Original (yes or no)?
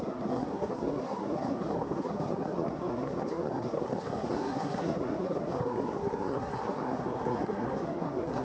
no